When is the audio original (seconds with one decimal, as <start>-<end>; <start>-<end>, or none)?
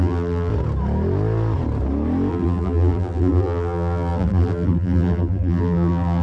0.5-2.3